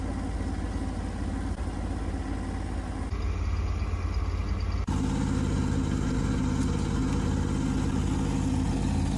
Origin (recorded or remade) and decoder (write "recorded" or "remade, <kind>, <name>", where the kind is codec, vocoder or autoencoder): recorded